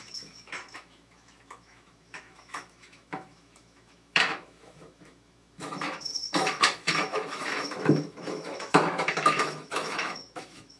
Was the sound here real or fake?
fake